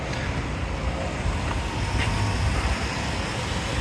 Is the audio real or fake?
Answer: real